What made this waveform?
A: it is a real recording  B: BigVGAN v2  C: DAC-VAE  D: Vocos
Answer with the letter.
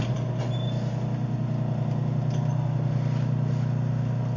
A